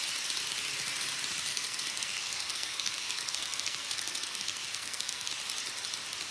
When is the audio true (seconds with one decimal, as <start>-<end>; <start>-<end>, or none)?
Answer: 0.0-1.5; 5.3-6.3